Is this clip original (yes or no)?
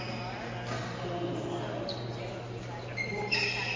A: yes